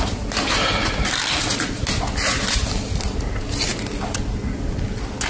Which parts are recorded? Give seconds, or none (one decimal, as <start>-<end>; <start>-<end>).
0.0-5.3